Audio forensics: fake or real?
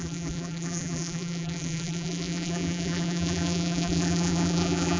fake